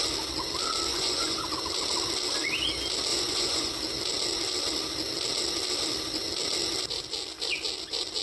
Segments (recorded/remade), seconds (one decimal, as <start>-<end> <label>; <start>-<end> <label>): 0.0-0.9 recorded; 0.9-1.4 remade; 1.4-3.1 recorded; 3.1-3.7 remade; 3.7-8.2 recorded